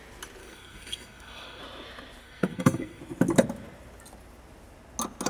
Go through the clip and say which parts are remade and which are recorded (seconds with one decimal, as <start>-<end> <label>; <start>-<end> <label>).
0.0-0.4 recorded; 0.4-1.6 remade; 1.6-2.2 recorded; 2.2-3.0 remade; 3.0-5.3 recorded